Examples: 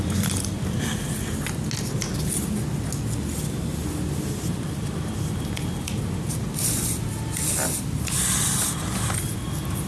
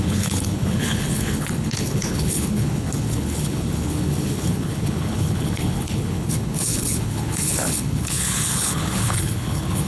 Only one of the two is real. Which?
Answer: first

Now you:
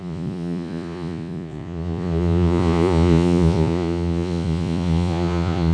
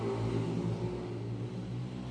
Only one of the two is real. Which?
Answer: second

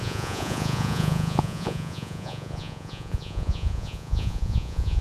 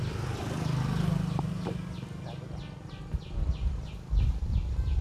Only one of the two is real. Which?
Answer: second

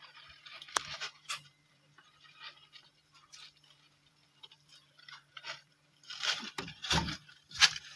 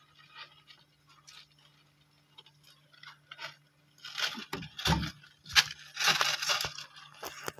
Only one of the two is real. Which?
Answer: second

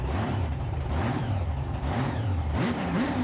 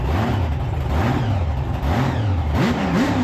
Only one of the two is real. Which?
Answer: second